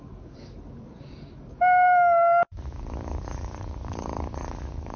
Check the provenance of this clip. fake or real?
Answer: fake